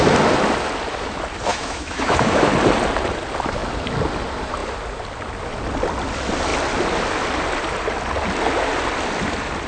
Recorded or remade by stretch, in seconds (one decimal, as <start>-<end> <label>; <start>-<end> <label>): 0.0-1.5 recorded; 1.5-2.5 remade; 2.5-9.7 recorded